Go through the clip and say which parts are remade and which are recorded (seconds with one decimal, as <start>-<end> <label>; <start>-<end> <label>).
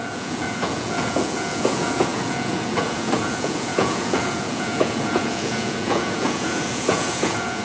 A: 0.0-7.6 remade